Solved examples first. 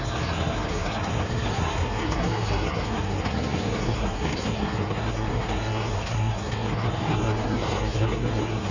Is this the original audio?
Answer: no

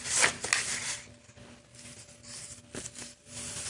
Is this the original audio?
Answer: yes